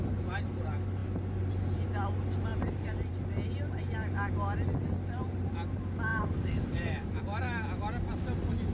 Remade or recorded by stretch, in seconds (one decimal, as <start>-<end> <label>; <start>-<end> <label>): 0.0-6.1 recorded; 6.1-7.2 remade; 7.2-8.7 recorded